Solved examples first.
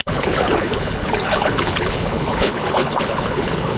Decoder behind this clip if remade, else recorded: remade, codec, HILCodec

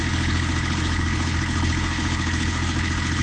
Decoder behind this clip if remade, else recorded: remade, codec, HILCodec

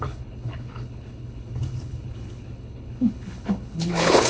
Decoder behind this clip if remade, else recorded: remade, codec, HILCodec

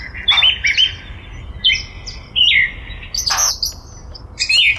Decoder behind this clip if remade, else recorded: recorded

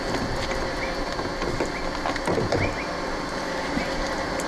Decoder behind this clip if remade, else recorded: recorded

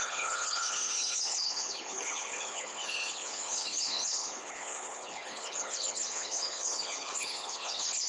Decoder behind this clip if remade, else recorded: remade, codec, HILCodec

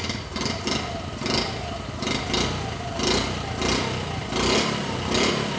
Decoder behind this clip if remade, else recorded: recorded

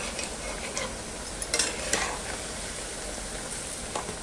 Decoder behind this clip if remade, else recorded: recorded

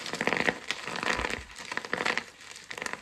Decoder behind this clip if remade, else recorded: recorded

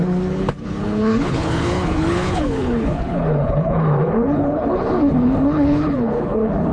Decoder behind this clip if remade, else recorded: remade, codec, HILCodec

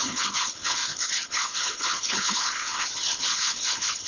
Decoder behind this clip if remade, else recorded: remade, codec, HILCodec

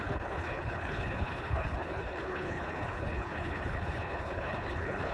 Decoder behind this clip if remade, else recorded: remade, codec, HILCodec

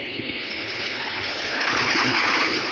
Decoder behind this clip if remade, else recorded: remade, codec, HILCodec